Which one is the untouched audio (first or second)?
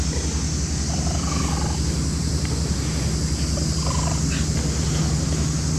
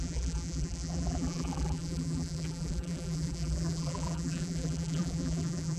first